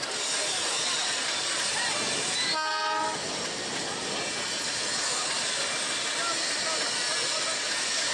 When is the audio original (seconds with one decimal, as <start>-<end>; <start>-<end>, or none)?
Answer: 0.0-5.2; 5.9-8.1

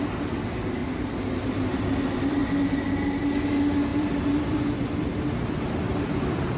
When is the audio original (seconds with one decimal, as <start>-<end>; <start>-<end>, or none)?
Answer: 0.8-1.4; 2.4-3.5

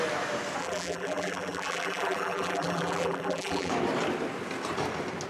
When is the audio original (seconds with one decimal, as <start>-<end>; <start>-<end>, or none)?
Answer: 0.0-0.6; 3.7-5.3

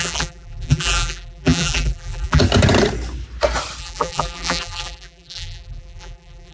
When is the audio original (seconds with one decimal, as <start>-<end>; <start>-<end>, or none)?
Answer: 2.4-3.8

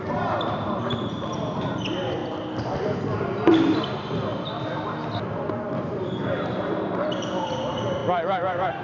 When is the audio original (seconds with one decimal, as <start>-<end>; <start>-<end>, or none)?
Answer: 2.2-3.2; 4.3-5.8